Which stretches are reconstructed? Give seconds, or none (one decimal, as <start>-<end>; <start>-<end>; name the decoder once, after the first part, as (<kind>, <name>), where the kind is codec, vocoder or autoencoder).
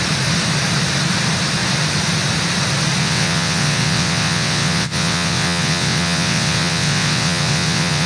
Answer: 3.0-8.1 (vocoder, WaveNeXt)